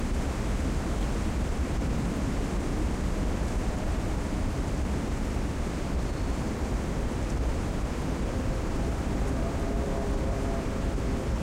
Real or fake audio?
fake